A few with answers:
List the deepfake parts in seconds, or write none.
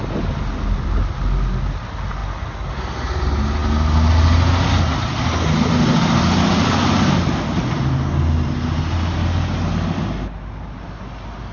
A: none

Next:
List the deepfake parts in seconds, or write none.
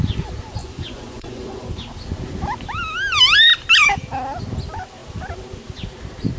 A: 0.6-1.7 (vocoder, Vocos)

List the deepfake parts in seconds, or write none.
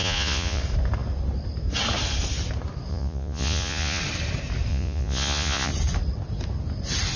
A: 0.0-0.6 (vocoder, Vocos); 2.9-4.0; 4.7-5.7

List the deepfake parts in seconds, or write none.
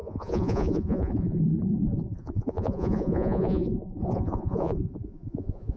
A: 0.0-1.4 (vocoder, Vocos); 1.9-5.8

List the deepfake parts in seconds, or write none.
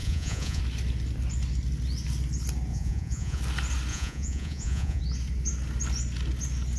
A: 0.0-0.6 (vocoder, Vocos); 2.7-3.4; 3.9-5.0